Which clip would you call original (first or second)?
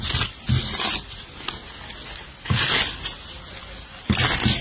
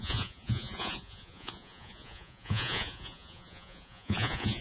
first